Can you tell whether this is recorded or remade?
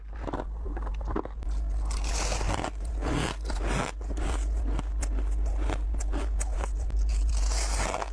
recorded